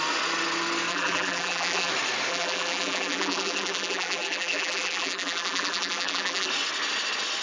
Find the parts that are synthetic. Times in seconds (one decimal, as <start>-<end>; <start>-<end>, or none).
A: 0.9-1.9; 2.3-6.5

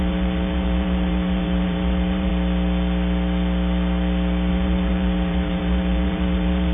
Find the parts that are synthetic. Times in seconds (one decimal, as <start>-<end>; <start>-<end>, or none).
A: 0.0-2.3; 4.5-6.7

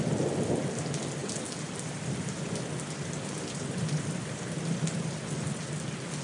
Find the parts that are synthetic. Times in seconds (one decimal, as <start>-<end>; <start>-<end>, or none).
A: 1.2-4.9

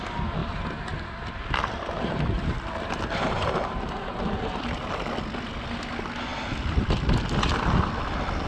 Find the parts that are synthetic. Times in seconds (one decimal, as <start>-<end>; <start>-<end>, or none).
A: 0.4-5.1; 6.3-7.5

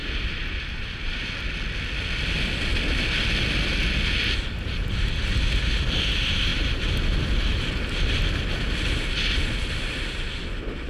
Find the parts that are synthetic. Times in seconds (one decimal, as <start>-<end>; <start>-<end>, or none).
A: 0.0-1.3

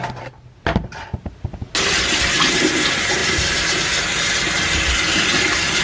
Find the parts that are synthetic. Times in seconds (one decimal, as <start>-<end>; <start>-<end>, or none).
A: none